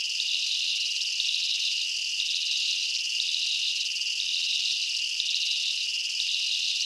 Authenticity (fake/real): real